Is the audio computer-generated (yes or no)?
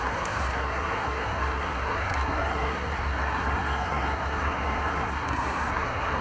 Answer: yes